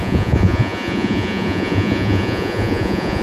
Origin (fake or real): fake